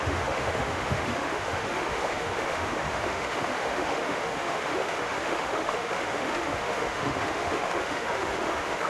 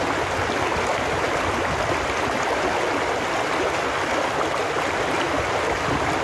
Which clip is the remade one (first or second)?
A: first